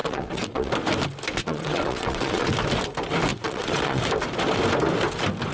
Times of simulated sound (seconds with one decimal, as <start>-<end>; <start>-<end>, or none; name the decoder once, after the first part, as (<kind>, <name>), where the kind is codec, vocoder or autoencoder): 0.0-0.7 (vocoder, WaveNeXt); 1.4-2.5; 3.3-4.0